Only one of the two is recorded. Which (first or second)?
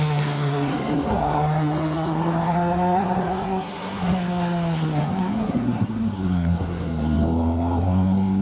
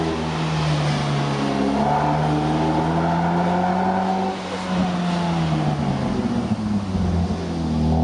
second